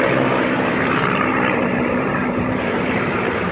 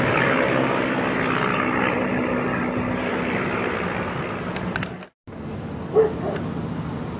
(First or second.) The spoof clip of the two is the first